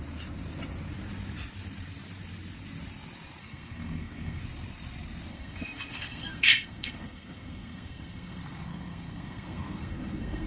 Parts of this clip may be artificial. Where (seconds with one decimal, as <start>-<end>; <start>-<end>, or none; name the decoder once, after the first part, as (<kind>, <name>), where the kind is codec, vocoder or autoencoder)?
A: 3.4-4.4 (codec, SNAC); 5.3-10.5